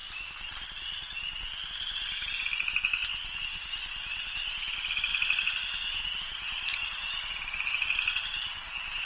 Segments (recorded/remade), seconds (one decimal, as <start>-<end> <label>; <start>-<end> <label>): 0.0-9.1 recorded